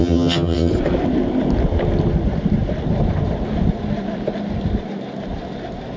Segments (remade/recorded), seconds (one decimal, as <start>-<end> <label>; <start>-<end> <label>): 0.0-0.7 remade; 0.7-6.0 recorded